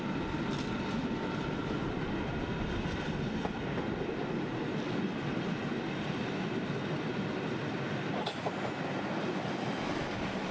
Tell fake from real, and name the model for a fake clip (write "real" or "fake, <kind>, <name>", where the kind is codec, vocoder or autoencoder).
real